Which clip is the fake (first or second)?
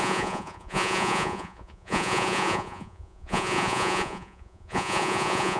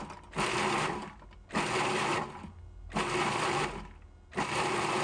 first